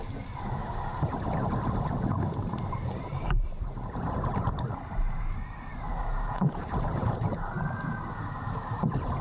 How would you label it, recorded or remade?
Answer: remade